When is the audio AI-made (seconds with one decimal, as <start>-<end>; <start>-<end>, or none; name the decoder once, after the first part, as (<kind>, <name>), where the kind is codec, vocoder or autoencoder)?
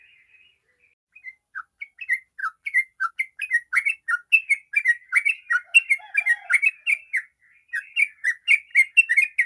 2.4-3.1 (vocoder, BigVGAN v2)